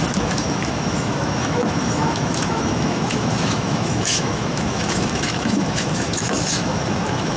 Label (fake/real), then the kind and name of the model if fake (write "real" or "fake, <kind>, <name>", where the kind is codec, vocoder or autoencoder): fake, autoencoder, DAC-VAE